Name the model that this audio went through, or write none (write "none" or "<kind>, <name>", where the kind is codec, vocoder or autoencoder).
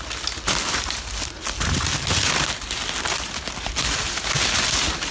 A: none